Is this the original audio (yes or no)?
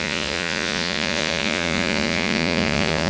no